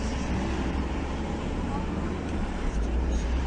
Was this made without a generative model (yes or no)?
no